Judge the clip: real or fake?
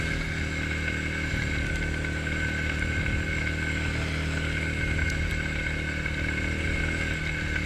real